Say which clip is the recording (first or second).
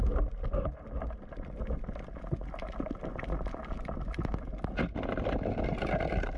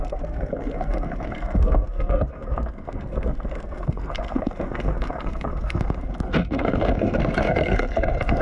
first